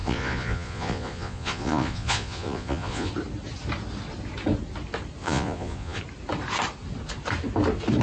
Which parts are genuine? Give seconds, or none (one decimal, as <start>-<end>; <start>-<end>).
3.1-5.2; 6.0-8.0